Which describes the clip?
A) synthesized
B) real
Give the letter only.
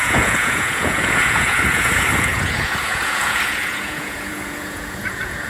A